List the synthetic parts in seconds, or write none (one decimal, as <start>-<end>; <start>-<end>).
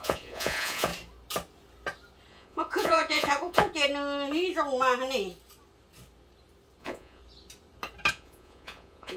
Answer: 0.0-0.9; 2.3-3.7; 6.8-7.2; 8.1-9.2